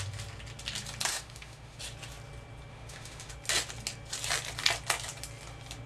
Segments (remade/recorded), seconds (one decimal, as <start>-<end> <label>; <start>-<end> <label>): 0.0-1.1 recorded; 1.1-1.8 remade; 1.8-2.7 recorded; 2.7-3.3 remade; 3.3-5.9 recorded